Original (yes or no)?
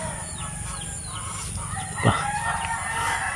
yes